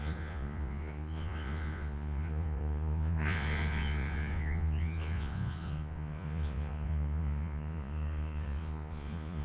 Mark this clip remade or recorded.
remade